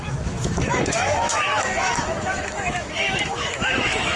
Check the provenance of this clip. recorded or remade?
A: remade